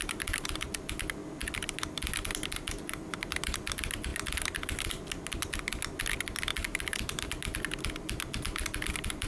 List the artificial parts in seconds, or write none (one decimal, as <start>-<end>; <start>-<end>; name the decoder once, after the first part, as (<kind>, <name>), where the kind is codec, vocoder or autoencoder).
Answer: none